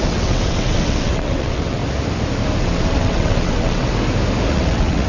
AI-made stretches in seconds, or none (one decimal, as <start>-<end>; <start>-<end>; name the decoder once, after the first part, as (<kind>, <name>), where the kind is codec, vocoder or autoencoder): 0.0-1.8 (vocoder, WaveNeXt); 2.6-3.9; 4.5-5.1